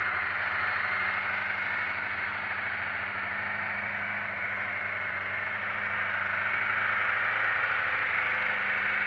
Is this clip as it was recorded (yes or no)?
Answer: yes